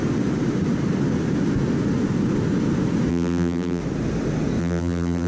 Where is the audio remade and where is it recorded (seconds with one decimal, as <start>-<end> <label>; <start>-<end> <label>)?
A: 0.0-3.1 recorded; 3.1-3.8 remade; 3.8-4.6 recorded; 4.6-5.3 remade